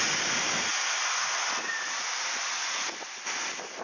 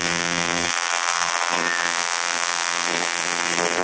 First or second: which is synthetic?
second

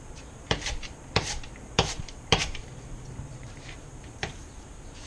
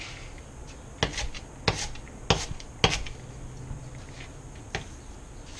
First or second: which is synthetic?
first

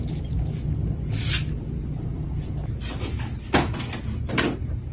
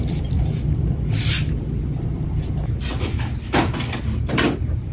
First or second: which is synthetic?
second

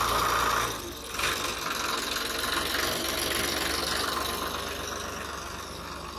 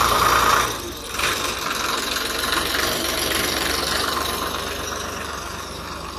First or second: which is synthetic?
second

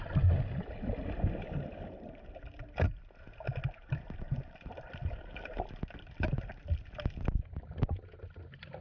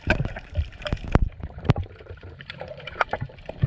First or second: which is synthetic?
second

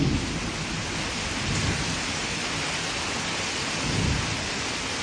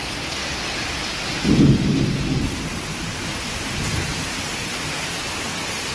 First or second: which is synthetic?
second